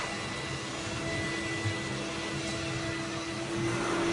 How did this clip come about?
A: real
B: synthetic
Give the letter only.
A